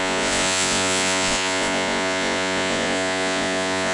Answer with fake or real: fake